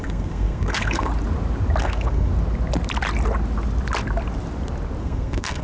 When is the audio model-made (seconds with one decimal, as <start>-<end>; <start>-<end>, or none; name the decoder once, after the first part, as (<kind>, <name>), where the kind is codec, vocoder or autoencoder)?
0.0-1.1 (codec, SNAC); 1.8-2.3; 5.0-5.6

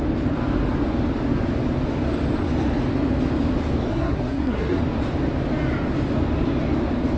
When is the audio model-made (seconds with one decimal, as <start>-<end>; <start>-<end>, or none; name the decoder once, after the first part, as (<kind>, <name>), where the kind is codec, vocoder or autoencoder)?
3.9-4.8 (codec, SNAC)

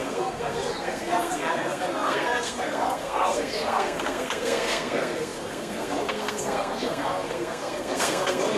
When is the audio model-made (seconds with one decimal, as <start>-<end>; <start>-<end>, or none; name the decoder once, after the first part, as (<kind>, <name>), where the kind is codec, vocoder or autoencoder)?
0.0-8.6 (codec, SNAC)